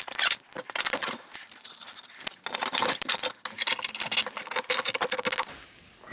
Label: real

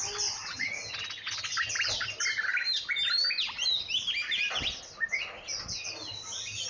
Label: real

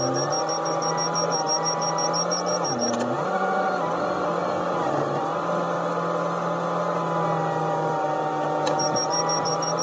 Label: real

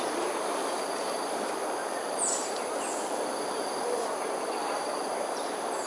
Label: fake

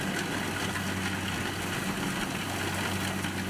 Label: real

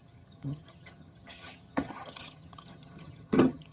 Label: fake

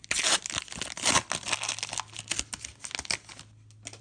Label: real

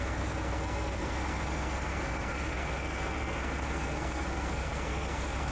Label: fake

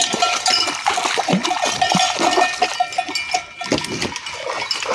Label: real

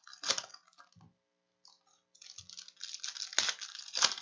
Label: real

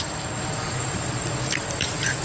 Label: real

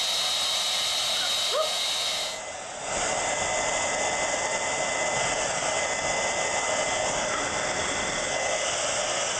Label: real